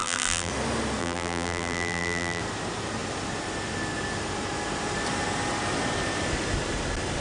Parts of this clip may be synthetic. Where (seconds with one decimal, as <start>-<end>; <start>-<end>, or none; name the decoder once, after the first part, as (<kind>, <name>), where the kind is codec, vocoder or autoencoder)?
0.0-0.5 (vocoder, BigVGAN v2); 1.0-2.4